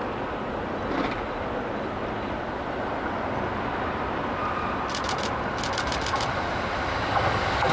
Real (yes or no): yes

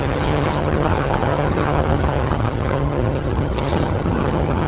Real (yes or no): no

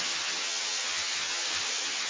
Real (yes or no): no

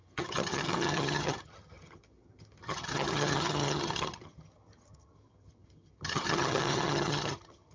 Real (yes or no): no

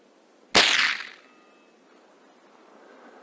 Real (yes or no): yes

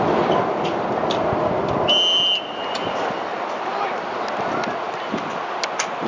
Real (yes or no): yes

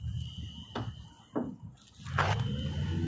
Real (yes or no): yes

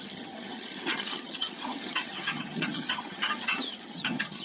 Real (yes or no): no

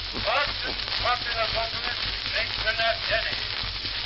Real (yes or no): yes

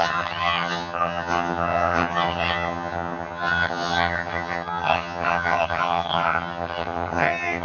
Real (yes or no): no